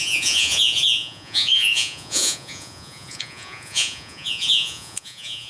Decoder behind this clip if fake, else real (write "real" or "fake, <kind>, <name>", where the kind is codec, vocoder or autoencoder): fake, vocoder, Vocos